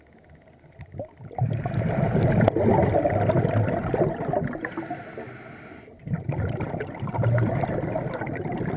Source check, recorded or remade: recorded